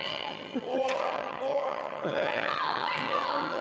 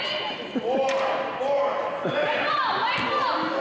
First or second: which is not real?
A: first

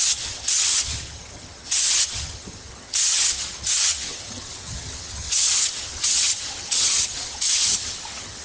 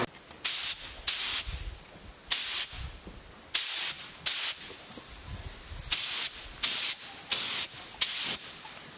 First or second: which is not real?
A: first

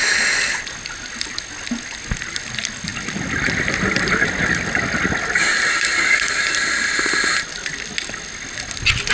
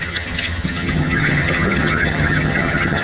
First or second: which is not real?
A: second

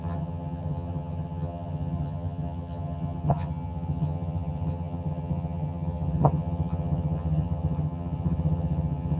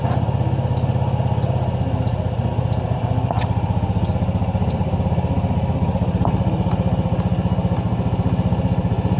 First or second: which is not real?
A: first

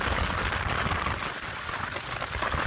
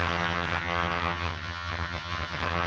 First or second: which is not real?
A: second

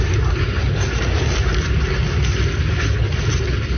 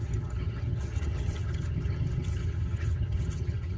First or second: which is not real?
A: second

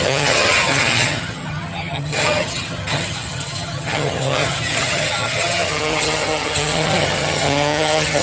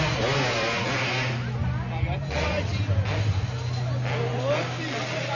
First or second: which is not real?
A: first